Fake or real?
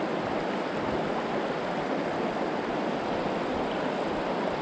real